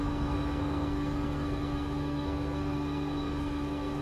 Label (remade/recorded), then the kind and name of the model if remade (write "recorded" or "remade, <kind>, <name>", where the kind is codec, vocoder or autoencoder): remade, codec, SNAC